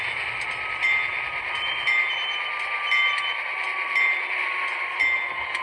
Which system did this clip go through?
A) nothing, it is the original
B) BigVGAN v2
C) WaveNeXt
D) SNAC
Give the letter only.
A